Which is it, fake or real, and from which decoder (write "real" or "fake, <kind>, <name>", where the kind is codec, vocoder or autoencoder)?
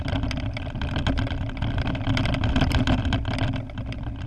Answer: real